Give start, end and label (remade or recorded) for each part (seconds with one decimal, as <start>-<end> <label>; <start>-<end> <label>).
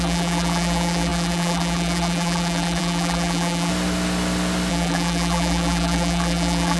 0.0-3.7 remade; 3.7-4.7 recorded; 4.7-6.8 remade